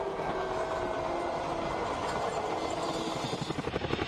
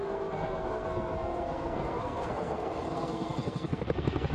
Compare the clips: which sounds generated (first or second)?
second